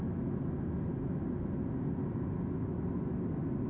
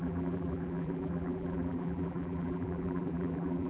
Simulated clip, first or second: second